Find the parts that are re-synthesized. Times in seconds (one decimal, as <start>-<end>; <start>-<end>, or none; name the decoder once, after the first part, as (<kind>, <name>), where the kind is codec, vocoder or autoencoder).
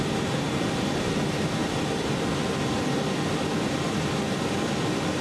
1.6-4.1 (vocoder, BigVGAN v2)